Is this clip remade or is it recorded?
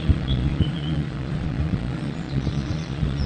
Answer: remade